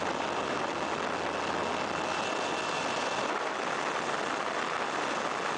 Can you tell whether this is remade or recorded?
recorded